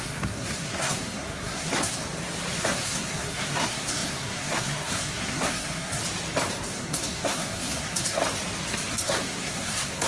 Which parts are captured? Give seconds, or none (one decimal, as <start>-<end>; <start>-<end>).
2.0-2.6; 6.0-6.7; 8.2-8.9